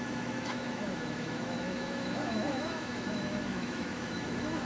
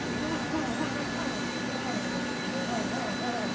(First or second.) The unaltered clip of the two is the second